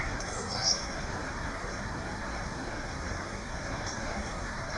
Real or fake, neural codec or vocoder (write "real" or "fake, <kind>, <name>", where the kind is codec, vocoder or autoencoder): fake, codec, SNAC